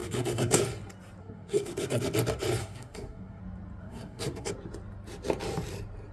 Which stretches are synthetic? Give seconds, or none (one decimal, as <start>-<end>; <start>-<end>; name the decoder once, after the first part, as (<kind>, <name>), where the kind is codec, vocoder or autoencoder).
0.0-0.6 (codec, SNAC); 1.2-2.0; 2.6-3.4; 3.8-4.5